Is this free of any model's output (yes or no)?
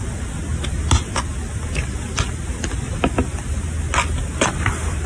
yes